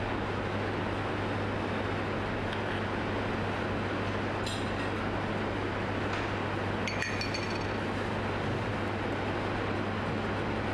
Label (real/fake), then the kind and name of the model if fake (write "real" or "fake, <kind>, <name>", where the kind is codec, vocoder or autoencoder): real